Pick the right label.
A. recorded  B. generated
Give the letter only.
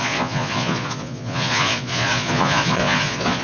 B